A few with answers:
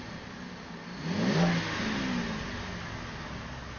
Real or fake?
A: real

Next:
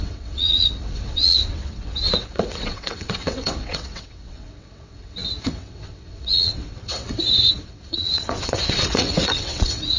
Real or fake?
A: fake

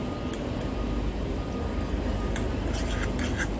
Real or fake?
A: real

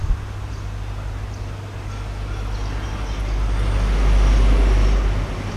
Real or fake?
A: real